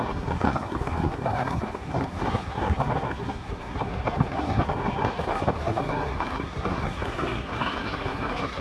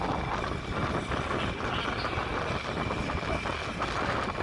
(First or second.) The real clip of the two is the second